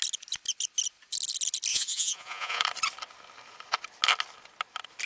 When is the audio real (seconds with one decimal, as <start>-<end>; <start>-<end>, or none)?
0.0-1.7; 2.6-5.1